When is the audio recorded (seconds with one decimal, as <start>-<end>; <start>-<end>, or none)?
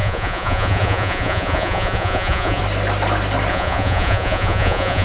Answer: 2.6-3.5